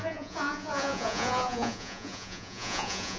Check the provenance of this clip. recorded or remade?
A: remade